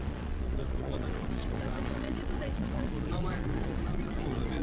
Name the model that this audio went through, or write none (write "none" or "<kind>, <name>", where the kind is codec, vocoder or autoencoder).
vocoder, Vocos